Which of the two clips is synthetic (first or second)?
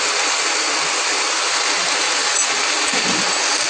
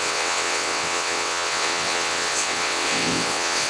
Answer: second